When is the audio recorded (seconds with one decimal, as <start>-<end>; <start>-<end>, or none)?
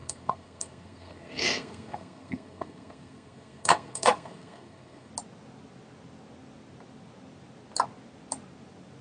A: 5.1-9.0